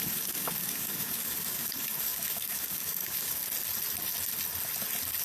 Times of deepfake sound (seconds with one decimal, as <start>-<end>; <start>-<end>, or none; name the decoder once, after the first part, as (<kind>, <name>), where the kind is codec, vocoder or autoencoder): 0.0-3.4 (codec, DAC)